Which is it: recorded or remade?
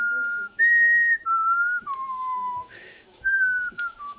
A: remade